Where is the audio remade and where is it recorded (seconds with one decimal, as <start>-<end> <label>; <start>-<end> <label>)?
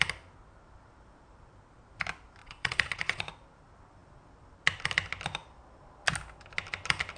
0.0-2.4 recorded; 2.4-3.2 remade; 3.2-7.2 recorded